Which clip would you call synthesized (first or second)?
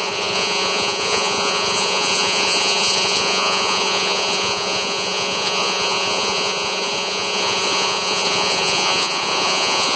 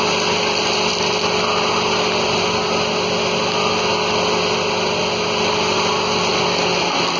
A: first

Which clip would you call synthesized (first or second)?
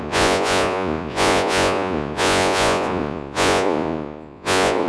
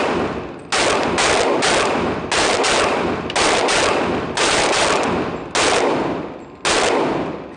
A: first